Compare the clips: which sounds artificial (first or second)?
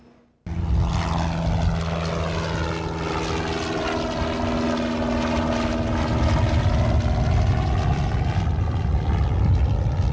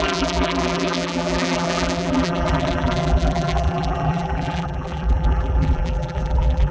second